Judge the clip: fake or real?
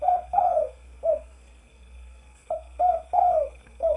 fake